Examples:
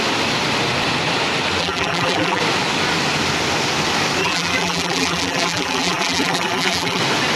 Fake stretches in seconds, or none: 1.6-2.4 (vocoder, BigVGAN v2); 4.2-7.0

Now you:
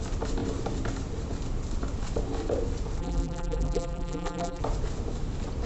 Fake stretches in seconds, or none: 3.0-4.6 (vocoder, BigVGAN v2)

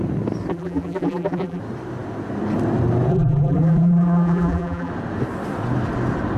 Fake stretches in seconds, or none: 0.5-1.6 (vocoder, BigVGAN v2); 3.1-4.9

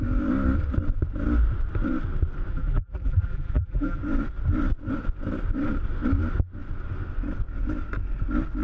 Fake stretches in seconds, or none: 2.5-4.0 (vocoder, BigVGAN v2)

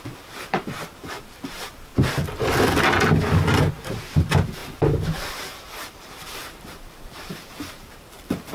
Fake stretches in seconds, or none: 0.0-1.9 (vocoder, BigVGAN v2); 3.8-8.5

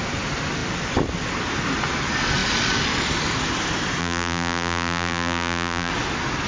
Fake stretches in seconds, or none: 4.0-5.9 (vocoder, BigVGAN v2)

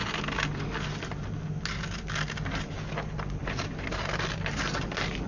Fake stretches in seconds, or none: 3.4-4.0 (vocoder, BigVGAN v2)

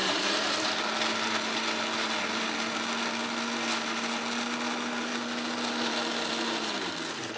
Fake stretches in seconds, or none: 0.0-0.8 (vocoder, BigVGAN v2)